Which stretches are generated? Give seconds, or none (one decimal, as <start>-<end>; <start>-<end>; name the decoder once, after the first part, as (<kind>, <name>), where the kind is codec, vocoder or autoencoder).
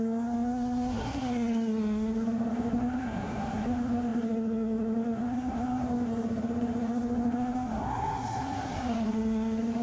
0.0-9.8 (codec, SNAC)